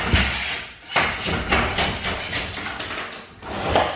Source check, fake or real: real